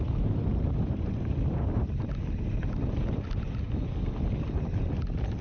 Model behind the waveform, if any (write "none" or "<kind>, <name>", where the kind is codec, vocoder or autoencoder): none